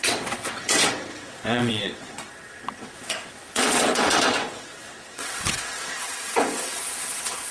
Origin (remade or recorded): remade